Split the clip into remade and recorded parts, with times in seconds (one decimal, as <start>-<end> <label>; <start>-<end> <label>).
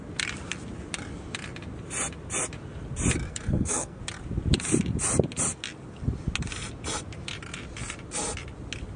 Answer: 0.0-3.3 recorded; 3.3-4.0 remade; 4.0-9.0 recorded